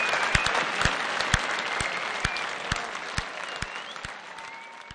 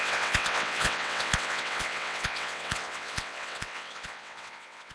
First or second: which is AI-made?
second